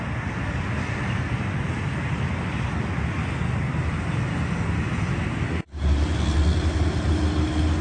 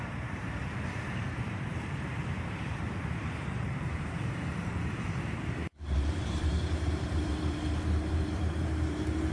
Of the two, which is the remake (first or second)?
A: second